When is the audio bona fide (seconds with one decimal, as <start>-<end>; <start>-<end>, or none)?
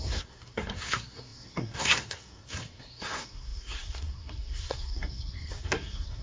none